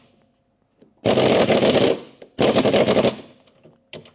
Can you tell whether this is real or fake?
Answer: real